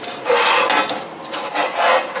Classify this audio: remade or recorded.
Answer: recorded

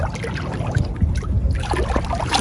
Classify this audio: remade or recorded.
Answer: recorded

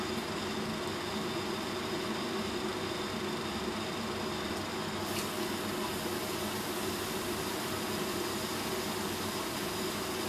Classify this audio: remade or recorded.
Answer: recorded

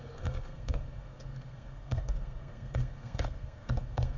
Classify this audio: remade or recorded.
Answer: remade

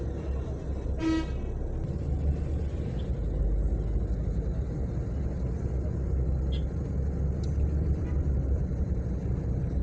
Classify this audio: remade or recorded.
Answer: recorded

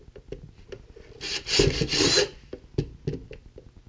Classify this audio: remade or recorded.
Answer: recorded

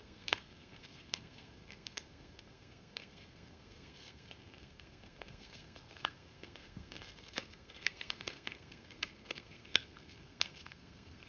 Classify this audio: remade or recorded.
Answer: remade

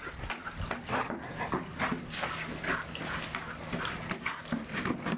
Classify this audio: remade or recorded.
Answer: recorded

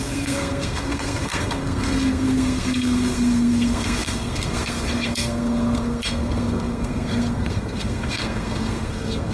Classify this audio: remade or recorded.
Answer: remade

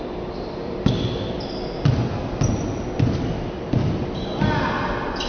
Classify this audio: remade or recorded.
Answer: recorded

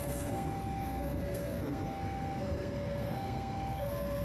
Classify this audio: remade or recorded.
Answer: remade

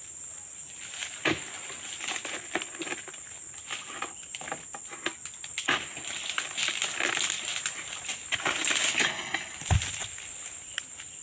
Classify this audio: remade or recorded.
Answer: recorded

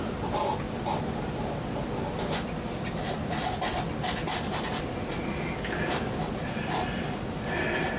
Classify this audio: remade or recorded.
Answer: recorded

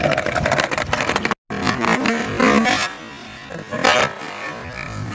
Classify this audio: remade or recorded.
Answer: recorded